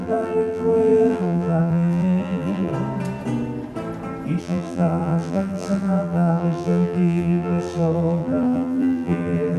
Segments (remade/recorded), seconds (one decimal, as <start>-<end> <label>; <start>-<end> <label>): 0.0-2.7 remade; 2.7-4.4 recorded; 4.4-9.6 remade